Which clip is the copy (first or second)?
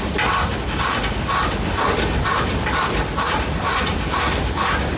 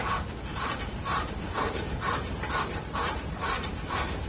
second